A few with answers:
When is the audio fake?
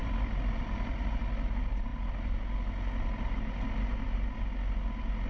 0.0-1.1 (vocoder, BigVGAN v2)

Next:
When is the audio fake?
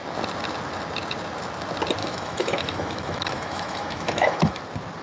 2.0-4.6 (autoencoder, DAC-VAE)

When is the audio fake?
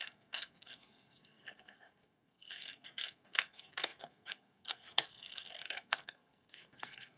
0.0-7.2 (codec, SNAC)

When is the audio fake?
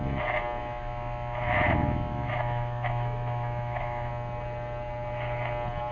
0.6-4.1 (autoencoder, DAC-VAE)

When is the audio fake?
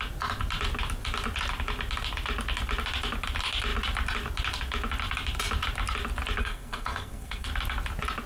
6.4-7.5 (codec, SNAC)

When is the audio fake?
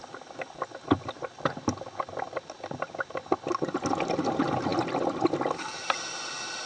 none